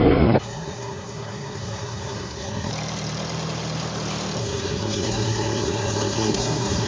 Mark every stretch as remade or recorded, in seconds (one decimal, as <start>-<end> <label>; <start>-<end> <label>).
0.0-2.7 remade; 2.7-4.4 recorded; 4.4-6.9 remade